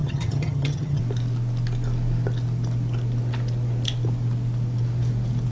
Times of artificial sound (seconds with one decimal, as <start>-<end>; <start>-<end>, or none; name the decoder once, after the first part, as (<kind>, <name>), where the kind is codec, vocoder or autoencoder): 0.0-1.0 (vocoder, HiFi-GAN)